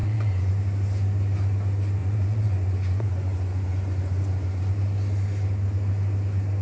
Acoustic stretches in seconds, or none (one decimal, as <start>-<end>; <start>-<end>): 0.5-2.0; 4.7-6.6